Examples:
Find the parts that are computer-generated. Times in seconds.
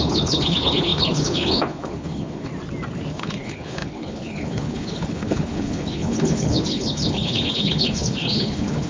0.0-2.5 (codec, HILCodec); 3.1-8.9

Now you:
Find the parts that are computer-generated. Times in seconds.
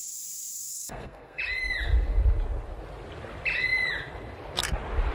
0.7-1.4 (codec, SNAC)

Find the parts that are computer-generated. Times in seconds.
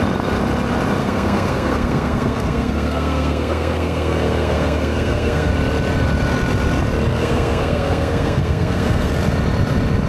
1.0-5.5 (codec, SNAC); 7.1-9.1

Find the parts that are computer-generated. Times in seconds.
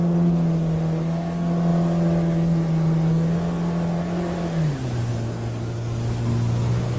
none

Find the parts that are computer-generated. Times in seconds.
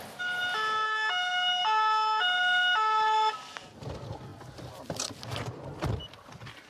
none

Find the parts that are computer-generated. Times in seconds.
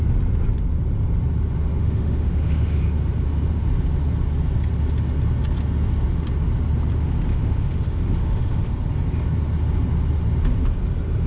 1.8-2.8 (autoencoder, DAC-VAE); 7.3-8.7